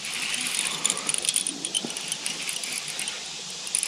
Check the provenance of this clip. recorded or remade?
recorded